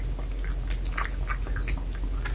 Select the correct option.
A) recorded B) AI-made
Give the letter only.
A